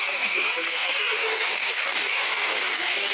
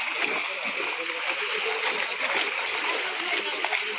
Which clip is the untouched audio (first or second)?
second